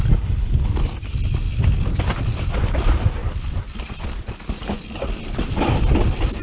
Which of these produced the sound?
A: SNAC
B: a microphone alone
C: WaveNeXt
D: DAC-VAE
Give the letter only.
B